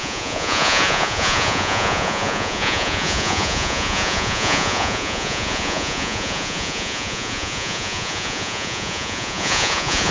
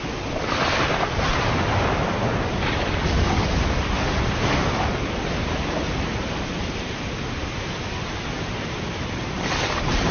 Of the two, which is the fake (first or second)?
first